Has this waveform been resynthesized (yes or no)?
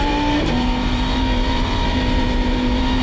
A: yes